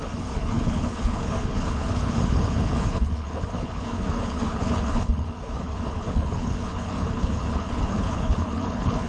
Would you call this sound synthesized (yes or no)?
yes